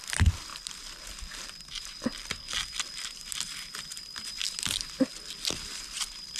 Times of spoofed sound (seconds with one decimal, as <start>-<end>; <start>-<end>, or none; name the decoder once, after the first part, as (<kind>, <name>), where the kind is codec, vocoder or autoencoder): none